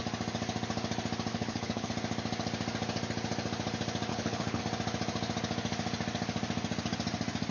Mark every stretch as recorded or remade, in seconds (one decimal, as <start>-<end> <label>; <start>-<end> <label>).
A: 0.0-1.3 recorded; 1.3-1.9 remade; 1.9-4.1 recorded; 4.1-4.6 remade; 4.6-7.5 recorded